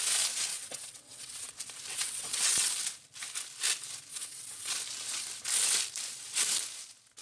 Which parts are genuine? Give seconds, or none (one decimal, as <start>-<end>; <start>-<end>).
0.0-0.5; 1.5-1.9; 2.7-4.1; 4.7-7.2